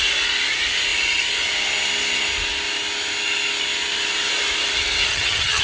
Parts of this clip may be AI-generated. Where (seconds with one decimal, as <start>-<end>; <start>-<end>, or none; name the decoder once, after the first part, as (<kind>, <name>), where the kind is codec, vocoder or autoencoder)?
5.1-5.6 (vocoder, HiFi-GAN)